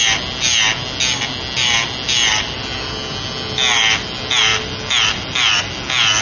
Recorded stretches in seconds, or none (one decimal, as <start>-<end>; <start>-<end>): 0.0-6.2

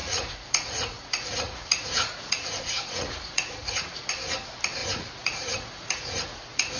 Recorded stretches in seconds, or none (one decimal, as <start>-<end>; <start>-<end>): 4.1-4.8

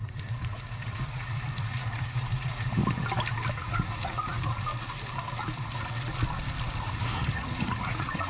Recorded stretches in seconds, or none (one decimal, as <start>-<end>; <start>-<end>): 2.8-3.6; 4.7-6.8